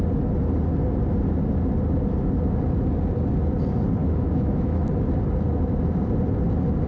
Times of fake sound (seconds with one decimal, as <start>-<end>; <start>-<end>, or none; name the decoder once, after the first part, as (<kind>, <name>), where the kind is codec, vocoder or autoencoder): 4.0-4.9 (autoencoder, DAC-VAE)